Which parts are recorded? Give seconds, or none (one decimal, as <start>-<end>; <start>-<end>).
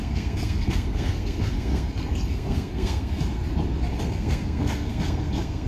3.4-4.0